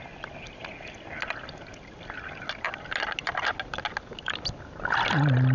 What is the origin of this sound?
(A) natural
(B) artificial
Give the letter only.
A